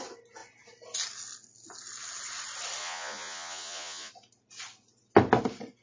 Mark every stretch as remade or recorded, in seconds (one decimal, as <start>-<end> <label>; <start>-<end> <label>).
0.0-2.8 recorded; 2.8-4.1 remade; 4.1-5.8 recorded